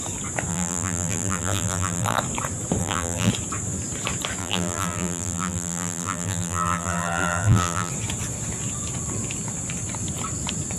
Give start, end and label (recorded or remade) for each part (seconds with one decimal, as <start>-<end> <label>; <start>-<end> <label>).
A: 0.0-0.5 recorded; 0.5-2.2 remade; 2.2-2.8 recorded; 2.8-3.3 remade; 3.3-4.4 recorded; 4.4-7.9 remade; 7.9-10.8 recorded